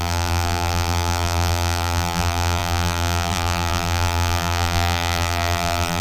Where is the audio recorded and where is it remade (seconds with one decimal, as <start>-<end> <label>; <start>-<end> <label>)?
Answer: 0.0-6.0 remade